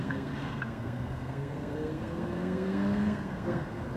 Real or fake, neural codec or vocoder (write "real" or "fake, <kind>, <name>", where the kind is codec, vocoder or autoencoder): fake, codec, SNAC